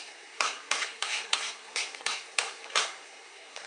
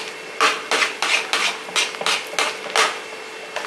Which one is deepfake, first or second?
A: first